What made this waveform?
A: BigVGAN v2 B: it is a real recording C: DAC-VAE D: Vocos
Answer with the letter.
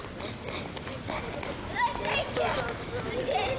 B